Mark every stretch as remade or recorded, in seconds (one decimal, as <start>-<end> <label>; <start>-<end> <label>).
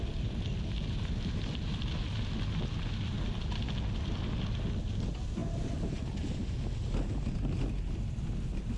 0.0-8.8 recorded